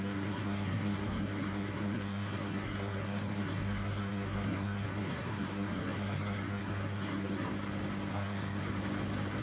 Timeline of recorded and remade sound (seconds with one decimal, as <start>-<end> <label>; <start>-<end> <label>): 0.0-7.5 remade; 7.5-8.1 recorded; 8.1-8.6 remade; 8.6-9.4 recorded